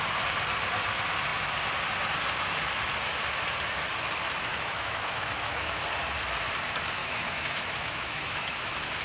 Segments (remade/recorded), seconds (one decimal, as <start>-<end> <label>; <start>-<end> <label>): 0.0-4.5 recorded; 4.5-5.8 remade; 5.8-7.0 recorded; 7.0-9.0 remade